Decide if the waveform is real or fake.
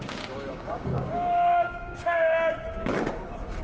fake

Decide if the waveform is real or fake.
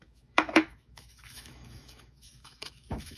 fake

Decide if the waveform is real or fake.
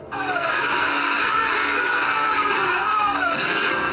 fake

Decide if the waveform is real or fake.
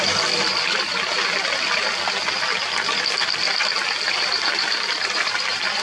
fake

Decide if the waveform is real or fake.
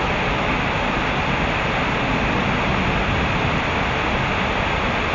real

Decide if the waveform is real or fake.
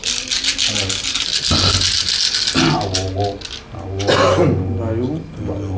real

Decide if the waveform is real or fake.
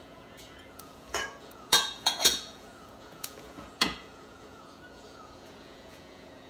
fake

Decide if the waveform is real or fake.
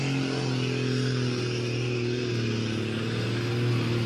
real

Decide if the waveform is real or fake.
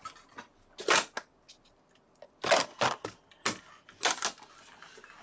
real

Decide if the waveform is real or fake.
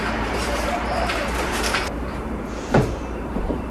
fake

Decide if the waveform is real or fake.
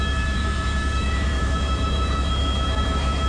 fake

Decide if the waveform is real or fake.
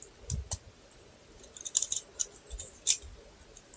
real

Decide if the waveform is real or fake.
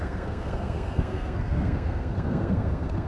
fake